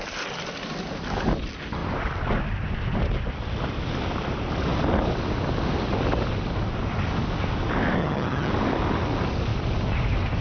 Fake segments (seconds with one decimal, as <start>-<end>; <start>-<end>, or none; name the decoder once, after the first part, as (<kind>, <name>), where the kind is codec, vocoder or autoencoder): 8.0-8.5 (vocoder, HiFi-GAN)